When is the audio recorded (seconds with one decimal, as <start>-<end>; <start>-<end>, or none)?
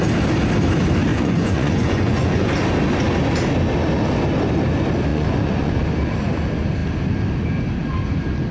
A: 0.0-1.1; 2.5-5.1; 5.8-8.5